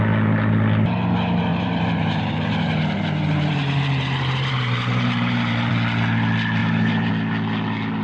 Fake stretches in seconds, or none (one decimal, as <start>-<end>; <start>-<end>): 1.5-5.7; 6.6-7.1